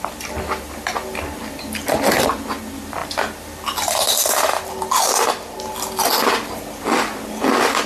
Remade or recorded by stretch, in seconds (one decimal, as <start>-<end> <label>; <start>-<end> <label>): 0.0-7.9 remade